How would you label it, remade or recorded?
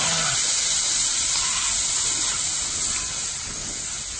recorded